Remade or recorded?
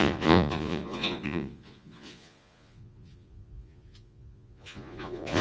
remade